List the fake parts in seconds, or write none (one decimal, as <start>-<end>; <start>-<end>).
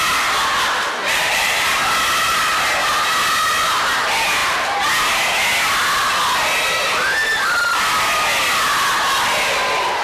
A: 1.0-1.8